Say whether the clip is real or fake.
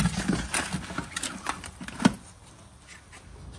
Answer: real